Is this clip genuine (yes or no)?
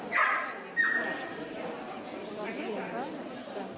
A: yes